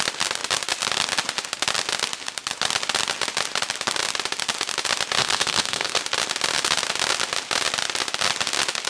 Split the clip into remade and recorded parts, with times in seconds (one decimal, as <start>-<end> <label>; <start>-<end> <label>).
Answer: 0.0-5.2 recorded; 5.2-6.0 remade; 6.0-8.9 recorded